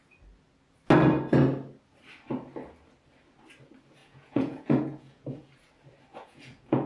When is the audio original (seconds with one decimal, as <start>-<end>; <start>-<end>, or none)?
0.0-4.0; 5.5-6.1